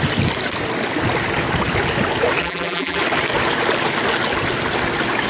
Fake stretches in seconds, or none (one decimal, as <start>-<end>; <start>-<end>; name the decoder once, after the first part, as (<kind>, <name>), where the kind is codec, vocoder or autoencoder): 2.4-3.0 (vocoder, BigVGAN v2)